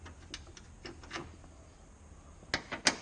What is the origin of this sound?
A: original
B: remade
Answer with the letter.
A